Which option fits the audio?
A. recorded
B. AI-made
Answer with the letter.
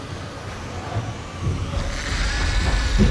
A